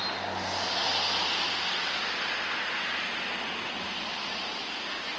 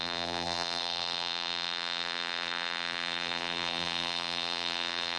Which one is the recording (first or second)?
first